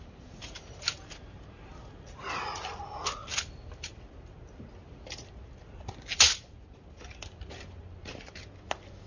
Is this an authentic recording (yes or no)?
yes